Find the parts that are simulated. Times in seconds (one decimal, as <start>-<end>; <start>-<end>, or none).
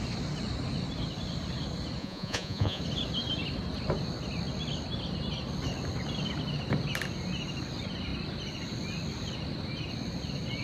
2.0-2.8